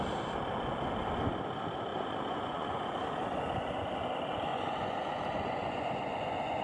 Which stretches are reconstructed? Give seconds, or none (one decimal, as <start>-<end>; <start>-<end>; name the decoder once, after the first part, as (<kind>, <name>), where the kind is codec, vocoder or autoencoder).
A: 1.9-2.9 (vocoder, Vocos); 4.5-6.6